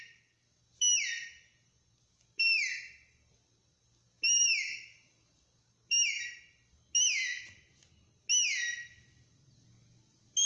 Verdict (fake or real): real